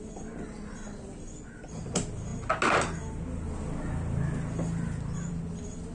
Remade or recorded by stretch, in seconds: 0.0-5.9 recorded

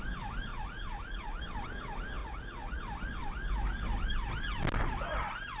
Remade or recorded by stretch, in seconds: 0.0-0.5 recorded; 0.5-1.4 remade; 1.4-2.2 recorded; 2.2-2.8 remade; 2.8-5.6 recorded

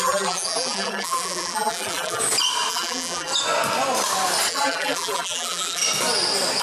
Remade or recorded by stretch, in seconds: 0.0-2.2 remade; 2.2-2.7 recorded; 2.7-3.3 remade; 3.3-4.5 recorded; 4.5-5.8 remade; 5.8-6.6 recorded